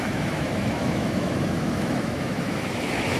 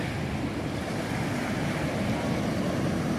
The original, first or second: second